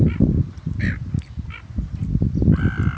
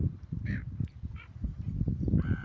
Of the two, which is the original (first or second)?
first